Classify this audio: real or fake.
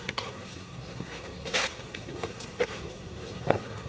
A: fake